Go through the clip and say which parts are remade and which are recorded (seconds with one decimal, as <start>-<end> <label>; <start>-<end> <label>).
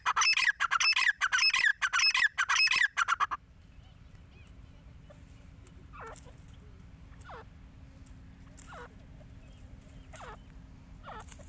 0.0-11.5 recorded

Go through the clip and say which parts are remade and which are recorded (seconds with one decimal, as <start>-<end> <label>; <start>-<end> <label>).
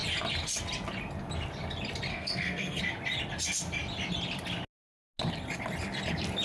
0.0-2.1 recorded; 2.1-2.8 remade; 2.8-6.4 recorded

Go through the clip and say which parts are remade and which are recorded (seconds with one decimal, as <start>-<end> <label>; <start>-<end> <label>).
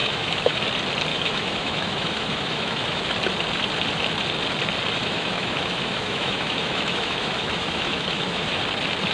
0.0-0.6 remade; 0.6-1.1 recorded; 1.1-3.0 remade; 3.0-5.0 recorded; 5.0-8.6 remade; 8.6-9.1 recorded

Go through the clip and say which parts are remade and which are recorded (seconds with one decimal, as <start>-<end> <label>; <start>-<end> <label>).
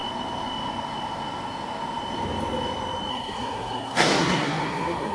0.0-3.1 recorded; 3.1-5.1 remade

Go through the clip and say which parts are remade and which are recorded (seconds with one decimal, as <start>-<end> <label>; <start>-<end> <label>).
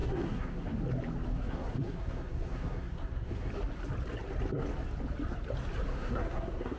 0.0-0.8 remade; 0.8-1.3 recorded; 1.3-3.5 remade; 3.5-5.9 recorded; 5.9-6.8 remade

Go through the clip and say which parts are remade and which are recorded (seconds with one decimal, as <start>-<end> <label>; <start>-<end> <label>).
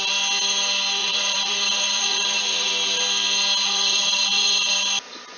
0.0-1.0 recorded; 1.0-2.7 remade; 2.7-3.6 recorded; 3.6-4.7 remade; 4.7-5.4 recorded